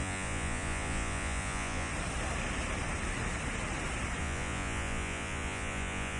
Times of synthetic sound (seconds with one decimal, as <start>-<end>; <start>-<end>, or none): 0.0-1.9; 4.2-6.2